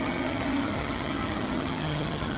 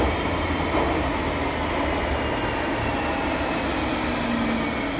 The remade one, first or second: first